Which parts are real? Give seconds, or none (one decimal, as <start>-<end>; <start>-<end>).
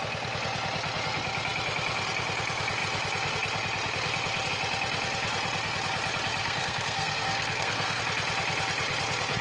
0.0-6.4; 8.0-9.4